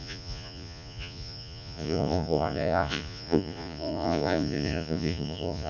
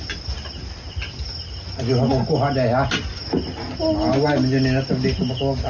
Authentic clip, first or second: second